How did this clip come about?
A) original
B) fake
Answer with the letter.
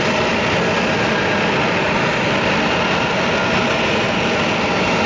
A